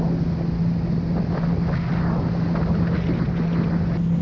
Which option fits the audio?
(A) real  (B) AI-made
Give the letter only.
A